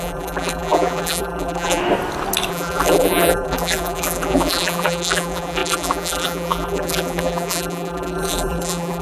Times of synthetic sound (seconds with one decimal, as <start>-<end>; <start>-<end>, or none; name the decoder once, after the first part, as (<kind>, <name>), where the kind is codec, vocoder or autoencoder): 0.0-1.8 (vocoder, BigVGAN v2); 2.5-9.0